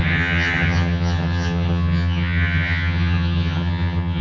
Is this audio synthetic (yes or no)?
yes